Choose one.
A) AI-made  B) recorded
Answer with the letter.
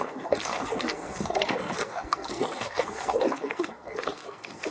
A